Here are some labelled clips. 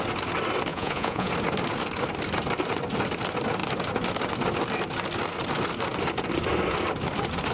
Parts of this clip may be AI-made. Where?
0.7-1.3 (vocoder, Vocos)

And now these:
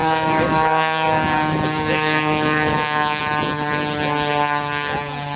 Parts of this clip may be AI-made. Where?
0.0-3.2 (codec, DAC)